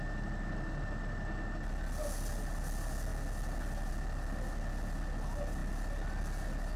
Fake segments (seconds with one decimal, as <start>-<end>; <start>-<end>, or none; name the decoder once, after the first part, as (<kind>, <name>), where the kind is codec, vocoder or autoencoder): none